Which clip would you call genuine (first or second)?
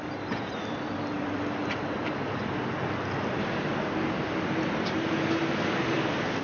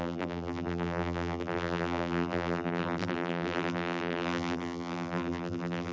first